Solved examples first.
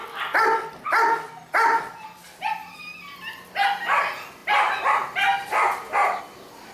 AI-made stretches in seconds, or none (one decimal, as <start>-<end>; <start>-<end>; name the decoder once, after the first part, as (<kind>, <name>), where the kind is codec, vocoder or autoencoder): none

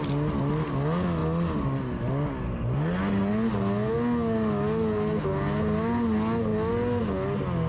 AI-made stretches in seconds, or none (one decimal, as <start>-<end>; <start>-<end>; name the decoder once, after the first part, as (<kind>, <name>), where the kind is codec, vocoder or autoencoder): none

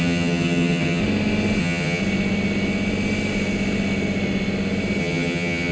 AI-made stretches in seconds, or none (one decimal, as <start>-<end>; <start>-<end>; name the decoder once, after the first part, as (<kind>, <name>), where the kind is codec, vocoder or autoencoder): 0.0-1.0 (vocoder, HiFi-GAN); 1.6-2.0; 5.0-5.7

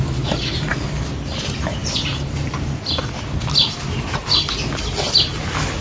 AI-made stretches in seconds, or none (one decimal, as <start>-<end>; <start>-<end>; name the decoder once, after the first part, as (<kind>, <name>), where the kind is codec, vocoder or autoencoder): 0.7-1.3 (vocoder, BigVGAN v2); 1.8-4.5